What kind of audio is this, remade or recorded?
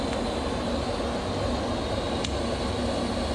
recorded